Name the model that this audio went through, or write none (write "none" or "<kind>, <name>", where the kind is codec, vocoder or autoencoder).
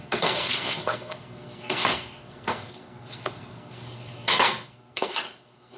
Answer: codec, SNAC